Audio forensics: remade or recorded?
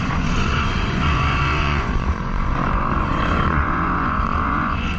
remade